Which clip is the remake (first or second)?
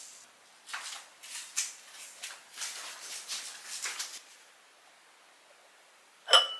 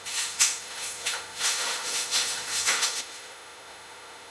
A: second